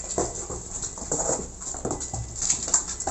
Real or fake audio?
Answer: real